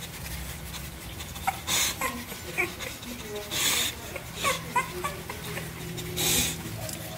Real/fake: real